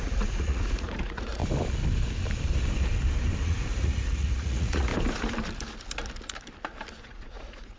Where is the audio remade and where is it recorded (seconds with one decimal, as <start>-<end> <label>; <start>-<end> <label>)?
0.0-1.4 remade; 1.4-3.4 recorded; 3.4-4.9 remade; 4.9-7.0 recorded; 7.0-7.8 remade